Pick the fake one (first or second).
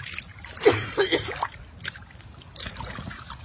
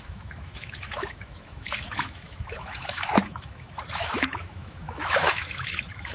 second